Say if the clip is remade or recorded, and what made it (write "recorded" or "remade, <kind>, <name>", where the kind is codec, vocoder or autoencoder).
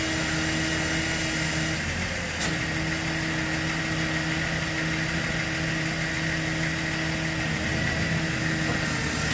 recorded